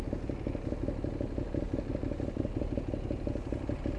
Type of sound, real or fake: real